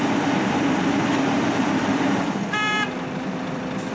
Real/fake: fake